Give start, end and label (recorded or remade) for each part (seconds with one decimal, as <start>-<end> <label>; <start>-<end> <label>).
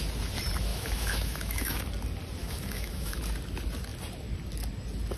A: 0.0-0.7 recorded; 0.7-1.8 remade; 1.8-2.4 recorded; 2.4-3.2 remade; 3.2-5.2 recorded